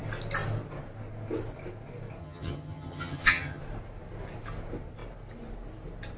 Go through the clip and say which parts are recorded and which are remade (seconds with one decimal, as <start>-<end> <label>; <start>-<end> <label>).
0.0-2.2 recorded; 2.2-3.6 remade; 3.6-6.2 recorded